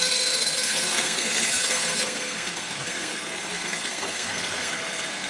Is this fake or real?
fake